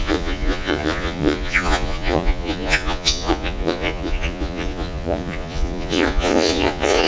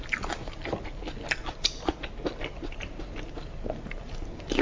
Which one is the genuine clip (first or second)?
second